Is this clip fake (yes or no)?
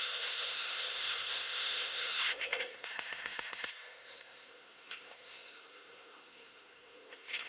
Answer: yes